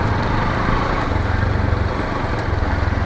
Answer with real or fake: fake